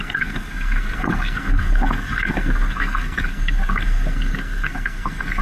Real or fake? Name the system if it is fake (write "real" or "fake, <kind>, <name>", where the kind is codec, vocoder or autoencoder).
fake, codec, SNAC